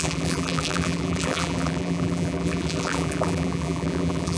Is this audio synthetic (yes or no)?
yes